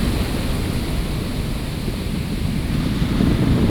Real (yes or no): yes